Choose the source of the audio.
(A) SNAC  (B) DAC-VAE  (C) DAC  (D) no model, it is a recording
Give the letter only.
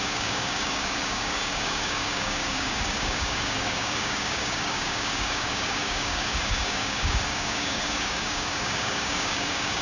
C